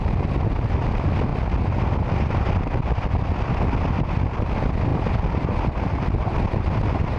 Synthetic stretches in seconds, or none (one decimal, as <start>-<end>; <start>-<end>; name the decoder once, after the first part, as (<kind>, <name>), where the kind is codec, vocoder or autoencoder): none